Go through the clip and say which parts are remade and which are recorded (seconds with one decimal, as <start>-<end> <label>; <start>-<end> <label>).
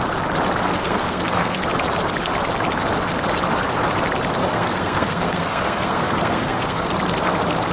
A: 0.0-0.8 recorded; 0.8-1.6 remade; 1.6-4.4 recorded; 4.4-6.9 remade; 6.9-7.7 recorded